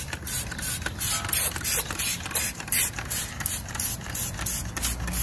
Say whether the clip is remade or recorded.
recorded